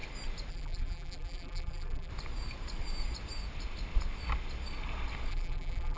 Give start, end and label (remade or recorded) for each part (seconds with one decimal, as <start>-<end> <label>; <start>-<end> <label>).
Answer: 0.0-0.5 recorded; 0.5-2.1 remade; 2.1-5.3 recorded; 5.3-6.0 remade